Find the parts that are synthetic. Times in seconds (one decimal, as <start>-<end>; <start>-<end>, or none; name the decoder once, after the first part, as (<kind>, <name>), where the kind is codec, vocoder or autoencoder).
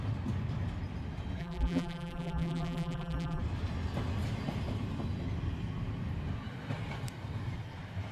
1.4-3.4 (vocoder, BigVGAN v2)